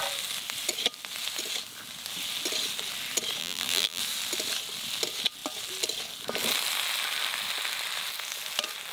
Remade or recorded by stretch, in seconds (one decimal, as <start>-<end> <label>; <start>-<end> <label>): 0.0-3.4 recorded; 3.4-4.0 remade; 4.0-8.9 recorded